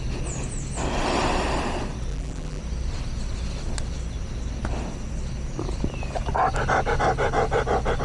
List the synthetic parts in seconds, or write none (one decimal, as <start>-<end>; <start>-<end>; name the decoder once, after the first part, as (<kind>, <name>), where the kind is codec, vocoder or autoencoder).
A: 2.1-2.6 (vocoder, BigVGAN v2)